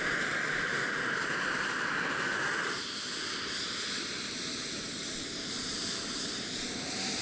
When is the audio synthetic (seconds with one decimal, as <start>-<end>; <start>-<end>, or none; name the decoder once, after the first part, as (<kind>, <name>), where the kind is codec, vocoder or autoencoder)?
0.0-7.2 (vocoder, BigVGAN v2)